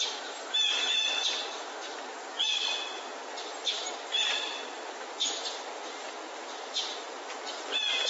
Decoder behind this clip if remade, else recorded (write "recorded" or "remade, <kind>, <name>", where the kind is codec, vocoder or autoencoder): recorded